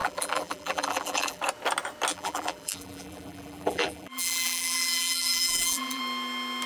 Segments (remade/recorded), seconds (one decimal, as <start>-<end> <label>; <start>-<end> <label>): 0.0-1.4 remade; 1.4-2.1 recorded; 2.1-6.0 remade; 6.0-6.7 recorded